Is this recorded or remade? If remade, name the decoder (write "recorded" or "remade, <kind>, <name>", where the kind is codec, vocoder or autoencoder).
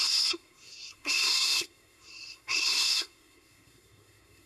remade, codec, SNAC